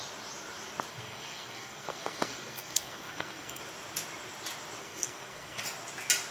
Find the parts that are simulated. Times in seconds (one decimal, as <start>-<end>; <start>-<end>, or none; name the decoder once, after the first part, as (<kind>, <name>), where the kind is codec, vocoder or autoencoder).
0.9-3.6 (codec, SNAC); 4.8-5.6